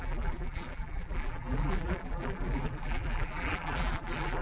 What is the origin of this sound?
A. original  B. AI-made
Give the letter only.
B